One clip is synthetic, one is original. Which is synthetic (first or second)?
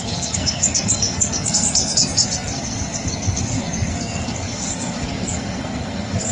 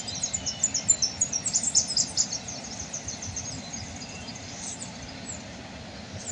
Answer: first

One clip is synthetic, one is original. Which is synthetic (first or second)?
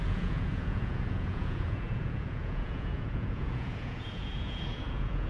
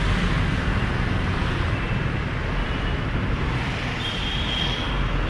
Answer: first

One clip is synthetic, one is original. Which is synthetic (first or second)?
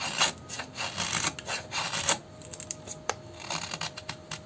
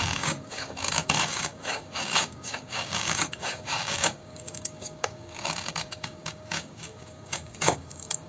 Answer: second